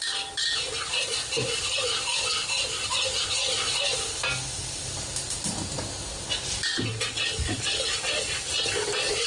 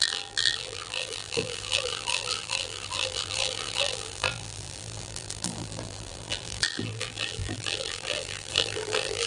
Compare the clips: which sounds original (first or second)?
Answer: first